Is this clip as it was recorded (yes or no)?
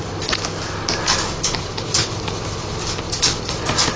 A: yes